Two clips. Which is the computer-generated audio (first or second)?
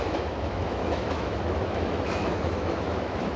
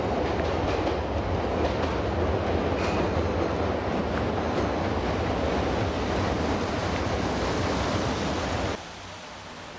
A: first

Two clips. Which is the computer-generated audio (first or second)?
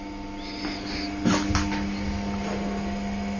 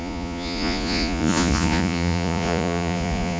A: second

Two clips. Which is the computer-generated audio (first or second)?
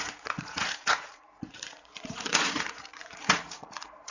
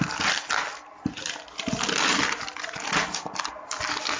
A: first